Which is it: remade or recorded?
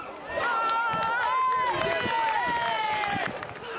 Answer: recorded